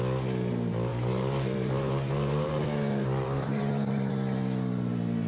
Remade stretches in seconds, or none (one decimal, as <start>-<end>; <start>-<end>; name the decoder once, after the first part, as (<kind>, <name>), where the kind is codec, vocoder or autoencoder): 0.9-4.1 (vocoder, BigVGAN v2)